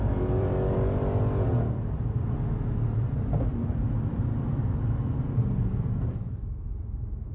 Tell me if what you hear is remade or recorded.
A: remade